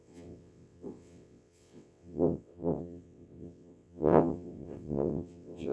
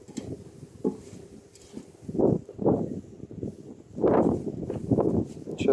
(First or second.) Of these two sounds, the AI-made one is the first